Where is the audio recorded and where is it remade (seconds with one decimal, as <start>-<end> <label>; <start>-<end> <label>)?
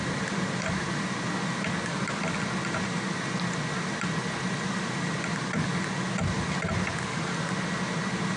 0.0-8.4 recorded